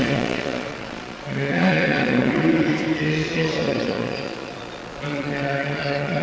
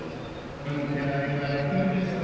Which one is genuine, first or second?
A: second